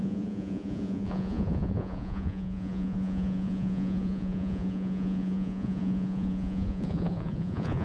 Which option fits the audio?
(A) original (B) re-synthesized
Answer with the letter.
B